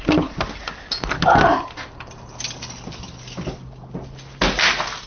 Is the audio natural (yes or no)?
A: yes